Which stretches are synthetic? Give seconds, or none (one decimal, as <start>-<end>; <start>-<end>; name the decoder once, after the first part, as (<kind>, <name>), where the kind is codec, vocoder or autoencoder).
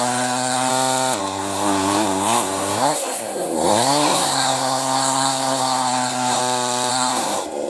0.0-0.7 (codec, SNAC); 1.2-6.4; 6.9-7.7